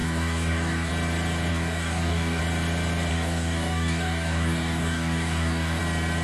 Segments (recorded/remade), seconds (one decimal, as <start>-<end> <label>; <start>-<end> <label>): 0.0-0.9 remade; 0.9-1.5 recorded; 1.5-2.4 remade; 2.4-3.1 recorded; 3.1-5.8 remade; 5.8-6.2 recorded